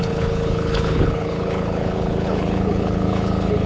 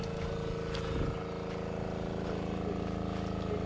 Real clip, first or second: second